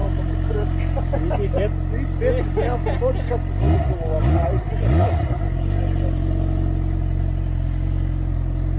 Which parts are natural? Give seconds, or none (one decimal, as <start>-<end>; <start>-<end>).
0.0-8.8